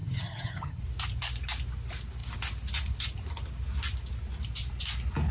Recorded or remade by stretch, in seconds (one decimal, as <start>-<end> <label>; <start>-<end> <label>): 0.0-0.8 remade; 0.8-5.3 recorded